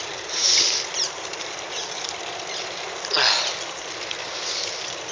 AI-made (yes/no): no